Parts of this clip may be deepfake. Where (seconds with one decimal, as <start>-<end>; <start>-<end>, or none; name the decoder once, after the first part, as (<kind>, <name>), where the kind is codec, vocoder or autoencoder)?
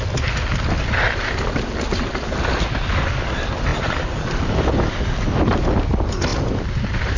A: 3.7-4.2 (vocoder, BigVGAN v2)